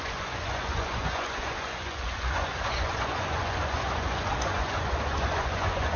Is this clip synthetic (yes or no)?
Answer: yes